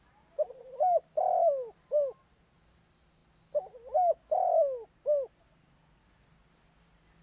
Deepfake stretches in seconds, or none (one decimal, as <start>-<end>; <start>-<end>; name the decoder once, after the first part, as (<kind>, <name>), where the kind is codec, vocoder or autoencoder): none